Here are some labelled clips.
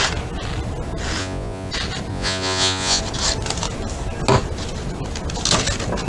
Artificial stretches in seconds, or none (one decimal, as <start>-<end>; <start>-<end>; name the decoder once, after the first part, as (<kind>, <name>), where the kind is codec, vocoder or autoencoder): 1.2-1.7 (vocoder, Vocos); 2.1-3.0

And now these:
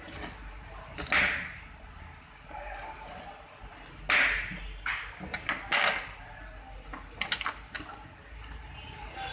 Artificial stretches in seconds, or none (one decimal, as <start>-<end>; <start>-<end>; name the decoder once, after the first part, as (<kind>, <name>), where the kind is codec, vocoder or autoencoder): none

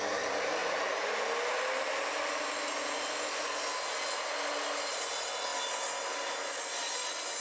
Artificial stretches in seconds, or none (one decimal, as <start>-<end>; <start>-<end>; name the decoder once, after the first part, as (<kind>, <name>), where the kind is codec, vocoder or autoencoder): none

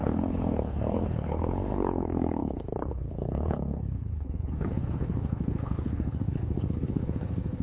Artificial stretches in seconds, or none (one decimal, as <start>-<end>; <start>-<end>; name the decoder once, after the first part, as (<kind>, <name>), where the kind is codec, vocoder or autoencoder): 0.0-7.6 (codec, HILCodec)

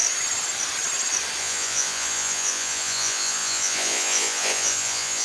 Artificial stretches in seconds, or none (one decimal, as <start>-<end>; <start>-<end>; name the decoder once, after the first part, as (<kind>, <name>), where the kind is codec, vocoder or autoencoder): 1.4-5.2 (vocoder, Vocos)

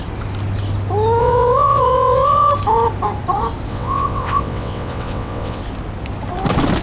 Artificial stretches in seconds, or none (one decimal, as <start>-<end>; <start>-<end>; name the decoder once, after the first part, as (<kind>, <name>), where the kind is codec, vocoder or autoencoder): 1.2-2.5 (vocoder, WaveNeXt); 3.7-5.6

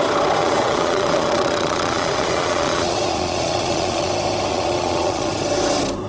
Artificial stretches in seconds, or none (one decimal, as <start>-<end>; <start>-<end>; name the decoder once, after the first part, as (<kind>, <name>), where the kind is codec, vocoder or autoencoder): 0.4-4.1 (vocoder, Vocos); 4.5-5.3